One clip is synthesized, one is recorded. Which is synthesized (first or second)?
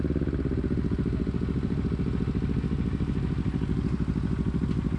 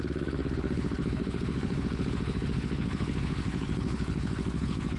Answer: second